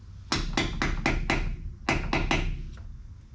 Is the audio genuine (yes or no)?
yes